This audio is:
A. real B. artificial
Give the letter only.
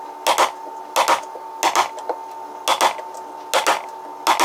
A